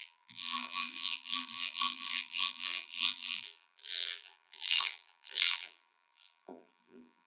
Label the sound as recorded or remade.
remade